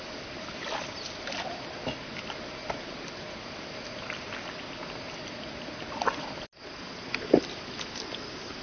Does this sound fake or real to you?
real